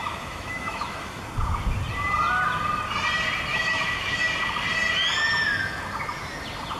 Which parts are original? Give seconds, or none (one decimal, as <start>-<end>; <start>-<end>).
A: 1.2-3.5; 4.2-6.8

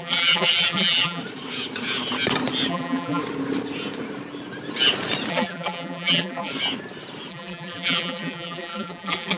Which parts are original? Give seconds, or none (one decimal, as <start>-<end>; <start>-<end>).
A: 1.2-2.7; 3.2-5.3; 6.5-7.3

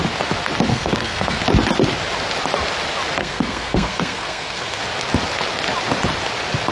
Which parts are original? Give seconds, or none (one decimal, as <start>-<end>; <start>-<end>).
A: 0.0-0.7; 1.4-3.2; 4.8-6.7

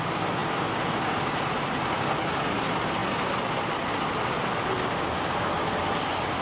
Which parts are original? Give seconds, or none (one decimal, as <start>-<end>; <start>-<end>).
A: 0.0-6.4

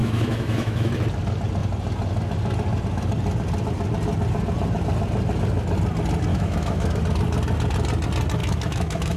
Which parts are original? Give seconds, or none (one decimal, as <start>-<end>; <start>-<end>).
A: 0.9-6.3; 7.0-8.4

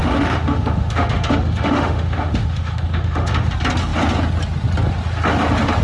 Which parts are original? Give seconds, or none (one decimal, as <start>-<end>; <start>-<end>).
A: 3.5-5.8

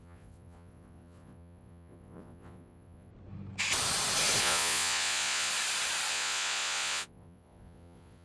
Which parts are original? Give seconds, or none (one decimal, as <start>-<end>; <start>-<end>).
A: 3.1-4.4; 5.5-6.1